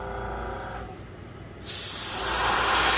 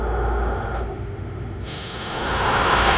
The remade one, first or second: second